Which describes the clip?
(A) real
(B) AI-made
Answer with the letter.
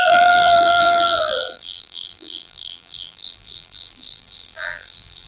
B